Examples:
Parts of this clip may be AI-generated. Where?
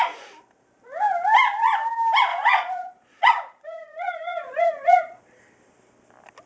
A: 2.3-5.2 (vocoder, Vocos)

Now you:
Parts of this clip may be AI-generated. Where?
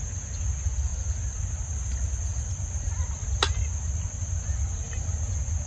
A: none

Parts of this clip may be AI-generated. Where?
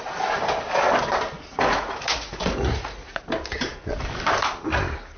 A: 1.5-3.2 (vocoder, Vocos)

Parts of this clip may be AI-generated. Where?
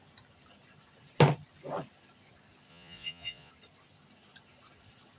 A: 2.7-3.5 (vocoder, Vocos)